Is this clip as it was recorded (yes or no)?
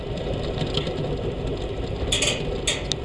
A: yes